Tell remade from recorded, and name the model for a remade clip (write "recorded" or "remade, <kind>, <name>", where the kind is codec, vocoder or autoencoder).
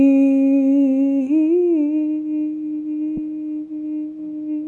recorded